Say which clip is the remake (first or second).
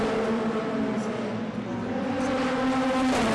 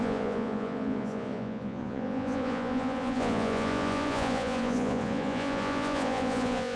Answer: second